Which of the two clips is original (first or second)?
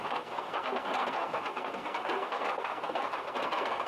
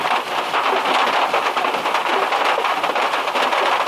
second